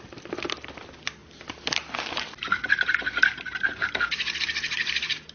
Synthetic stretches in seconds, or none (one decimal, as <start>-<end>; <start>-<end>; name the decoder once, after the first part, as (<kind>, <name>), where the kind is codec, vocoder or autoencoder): none